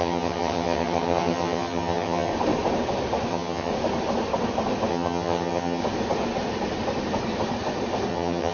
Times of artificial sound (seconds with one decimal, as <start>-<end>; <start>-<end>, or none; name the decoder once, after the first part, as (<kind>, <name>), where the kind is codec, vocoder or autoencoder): 0.0-2.3 (vocoder, HiFi-GAN); 3.3-3.7; 4.9-5.8; 8.1-8.5